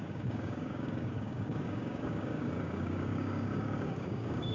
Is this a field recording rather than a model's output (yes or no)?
no